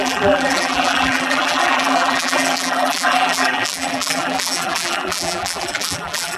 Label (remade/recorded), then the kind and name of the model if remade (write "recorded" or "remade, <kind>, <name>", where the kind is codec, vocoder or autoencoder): remade, vocoder, BigVGAN v2